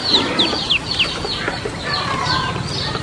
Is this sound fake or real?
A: real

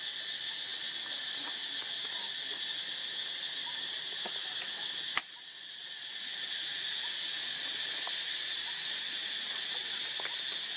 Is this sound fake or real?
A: real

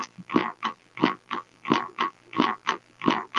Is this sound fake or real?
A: fake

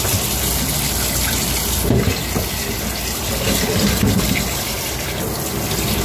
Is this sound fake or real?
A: real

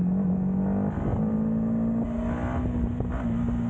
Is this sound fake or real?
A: real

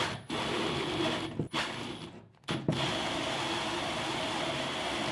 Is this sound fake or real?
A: real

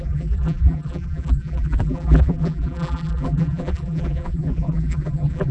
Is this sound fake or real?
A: fake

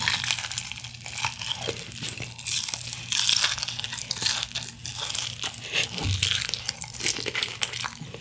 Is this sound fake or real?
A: real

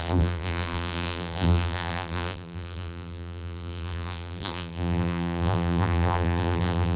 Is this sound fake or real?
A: fake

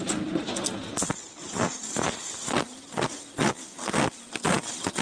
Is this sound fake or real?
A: real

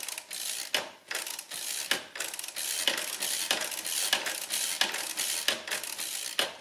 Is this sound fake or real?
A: real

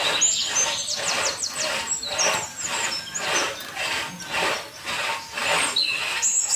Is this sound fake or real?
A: real